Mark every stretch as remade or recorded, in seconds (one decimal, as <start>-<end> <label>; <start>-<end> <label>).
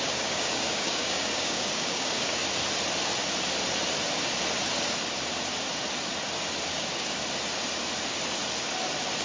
0.0-2.4 remade; 2.4-6.7 recorded; 6.7-7.2 remade; 7.2-9.2 recorded